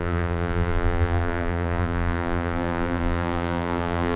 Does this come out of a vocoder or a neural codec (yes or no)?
yes